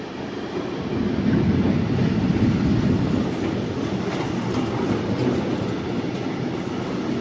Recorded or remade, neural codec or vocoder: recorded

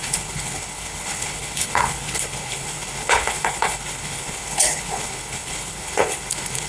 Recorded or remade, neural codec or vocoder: remade, codec, HILCodec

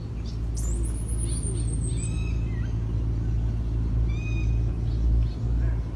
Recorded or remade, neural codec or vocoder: recorded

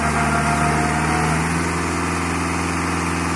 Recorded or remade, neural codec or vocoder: recorded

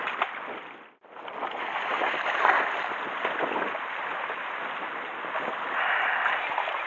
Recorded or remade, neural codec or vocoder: recorded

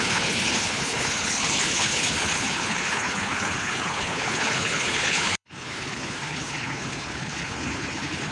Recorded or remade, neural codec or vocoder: remade, codec, HILCodec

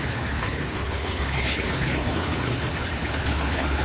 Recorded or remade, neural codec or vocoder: remade, codec, HILCodec